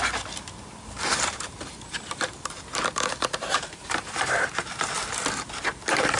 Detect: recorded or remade remade